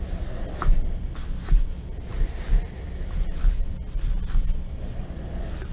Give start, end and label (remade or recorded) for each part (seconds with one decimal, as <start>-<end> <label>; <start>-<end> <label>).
0.0-5.7 recorded